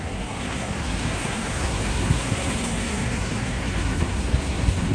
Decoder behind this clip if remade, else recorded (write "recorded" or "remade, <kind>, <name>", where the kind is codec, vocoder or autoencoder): remade, codec, SNAC